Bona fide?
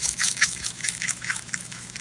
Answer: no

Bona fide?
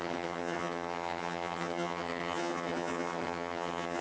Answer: no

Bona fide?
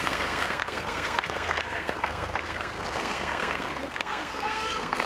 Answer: no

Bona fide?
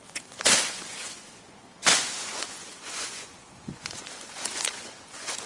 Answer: no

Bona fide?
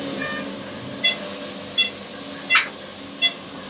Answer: yes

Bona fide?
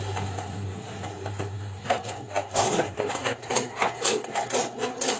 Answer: no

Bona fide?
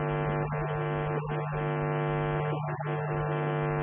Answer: yes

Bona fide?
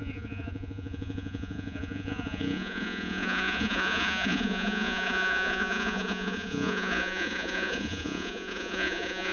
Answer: no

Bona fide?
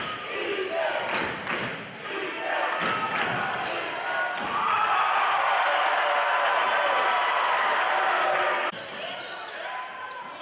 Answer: yes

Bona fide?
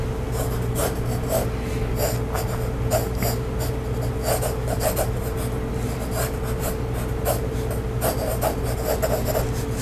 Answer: yes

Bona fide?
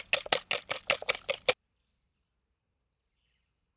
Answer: yes